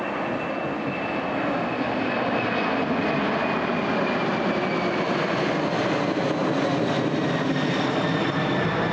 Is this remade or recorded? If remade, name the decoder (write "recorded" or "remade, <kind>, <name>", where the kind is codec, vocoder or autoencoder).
recorded